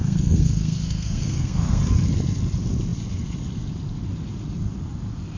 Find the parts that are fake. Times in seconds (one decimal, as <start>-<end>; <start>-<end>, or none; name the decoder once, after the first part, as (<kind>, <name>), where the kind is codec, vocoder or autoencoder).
0.0-1.8 (codec, SNAC)